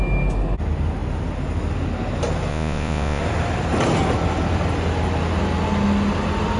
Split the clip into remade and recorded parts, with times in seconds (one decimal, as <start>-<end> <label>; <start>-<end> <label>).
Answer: 0.0-2.5 recorded; 2.5-3.2 remade; 3.2-6.6 recorded